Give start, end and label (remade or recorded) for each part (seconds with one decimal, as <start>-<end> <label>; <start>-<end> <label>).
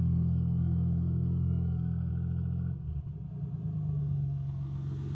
0.0-2.1 remade; 2.1-4.0 recorded; 4.0-5.1 remade